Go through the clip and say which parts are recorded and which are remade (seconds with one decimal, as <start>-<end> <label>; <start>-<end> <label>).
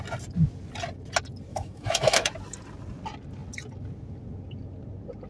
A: 0.0-1.5 recorded; 1.5-2.3 remade; 2.3-5.3 recorded